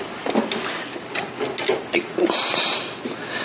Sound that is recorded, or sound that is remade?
recorded